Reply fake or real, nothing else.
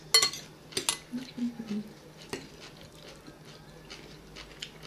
real